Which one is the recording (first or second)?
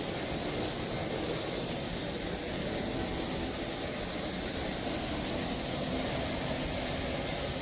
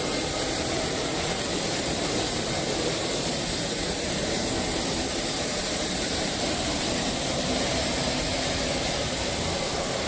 first